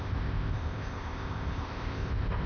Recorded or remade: remade